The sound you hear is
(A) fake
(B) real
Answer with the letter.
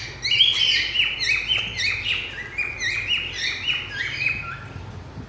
B